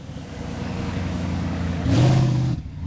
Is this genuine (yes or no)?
no